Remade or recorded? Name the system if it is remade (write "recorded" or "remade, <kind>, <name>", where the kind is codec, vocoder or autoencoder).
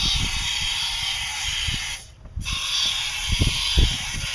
recorded